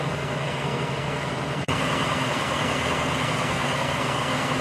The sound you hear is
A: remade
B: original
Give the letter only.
A